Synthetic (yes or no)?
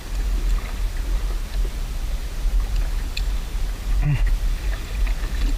no